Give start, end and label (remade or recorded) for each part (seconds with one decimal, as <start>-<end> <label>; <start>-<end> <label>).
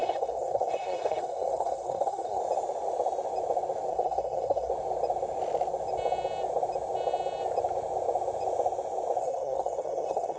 0.0-2.4 remade; 2.4-3.9 recorded; 3.9-4.7 remade; 4.7-9.2 recorded; 9.2-10.4 remade